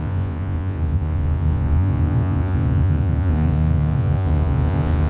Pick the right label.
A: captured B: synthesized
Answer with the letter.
B